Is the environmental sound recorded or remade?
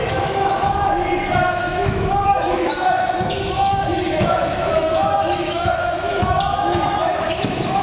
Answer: remade